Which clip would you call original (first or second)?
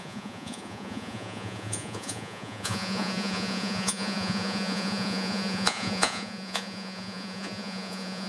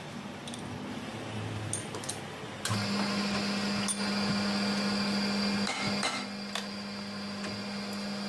second